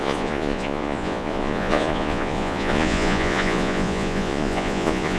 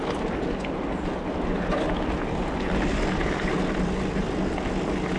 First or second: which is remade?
first